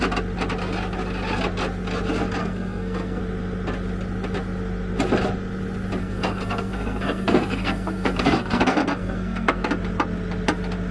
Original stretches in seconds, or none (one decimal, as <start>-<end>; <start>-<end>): 0.0-2.4; 3.2-6.0; 9.7-10.9